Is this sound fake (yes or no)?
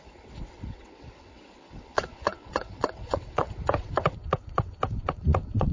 yes